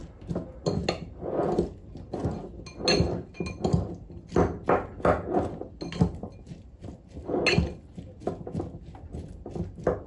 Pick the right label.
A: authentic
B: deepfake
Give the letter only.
A